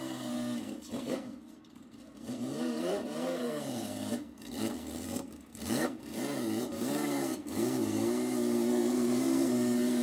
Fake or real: fake